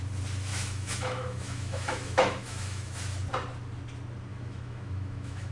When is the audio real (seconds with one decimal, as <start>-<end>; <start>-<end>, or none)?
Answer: 0.0-0.5; 3.0-4.3